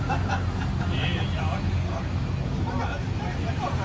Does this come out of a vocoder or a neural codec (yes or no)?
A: no